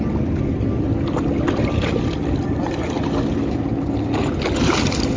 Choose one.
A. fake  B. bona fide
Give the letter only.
B